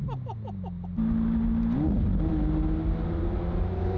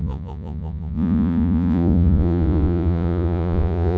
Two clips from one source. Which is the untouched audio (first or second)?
first